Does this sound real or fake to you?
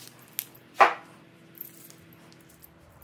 real